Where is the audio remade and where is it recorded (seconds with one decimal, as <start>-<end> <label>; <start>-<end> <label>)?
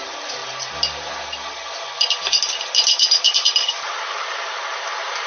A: 0.0-0.4 remade; 0.4-3.6 recorded; 3.6-5.3 remade